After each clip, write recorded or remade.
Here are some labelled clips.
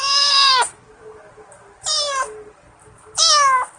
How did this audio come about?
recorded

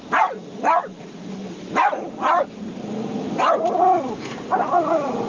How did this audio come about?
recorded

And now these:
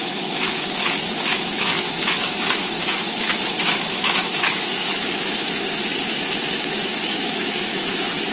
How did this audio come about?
remade